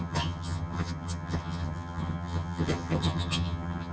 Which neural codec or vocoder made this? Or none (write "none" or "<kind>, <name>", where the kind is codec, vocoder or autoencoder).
vocoder, HiFi-GAN